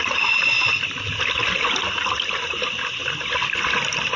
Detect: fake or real real